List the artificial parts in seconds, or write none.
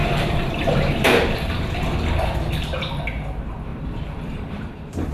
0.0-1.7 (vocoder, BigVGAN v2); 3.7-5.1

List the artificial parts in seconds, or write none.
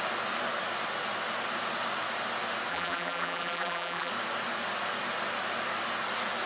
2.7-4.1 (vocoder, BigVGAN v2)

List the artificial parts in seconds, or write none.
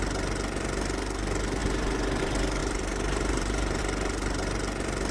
2.6-3.8 (vocoder, BigVGAN v2)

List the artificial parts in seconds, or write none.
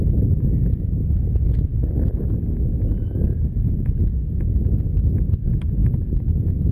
none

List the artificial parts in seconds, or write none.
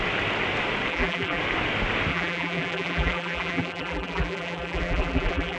0.9-1.4 (vocoder, BigVGAN v2); 2.1-5.6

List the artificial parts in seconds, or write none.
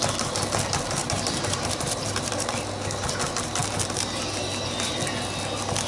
1.0-2.3 (vocoder, BigVGAN v2)